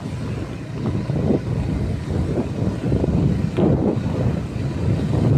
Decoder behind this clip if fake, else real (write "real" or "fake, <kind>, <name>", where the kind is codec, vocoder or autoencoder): real